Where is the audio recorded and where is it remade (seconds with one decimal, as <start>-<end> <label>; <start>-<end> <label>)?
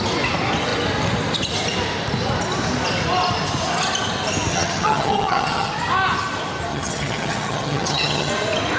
0.0-4.5 recorded; 4.5-5.7 remade; 5.7-6.7 recorded; 6.7-8.3 remade; 8.3-8.8 recorded